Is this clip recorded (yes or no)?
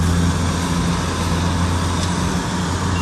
yes